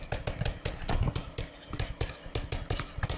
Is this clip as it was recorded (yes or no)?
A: yes